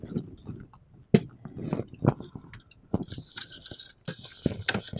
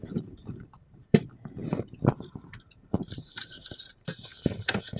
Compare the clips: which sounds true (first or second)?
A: first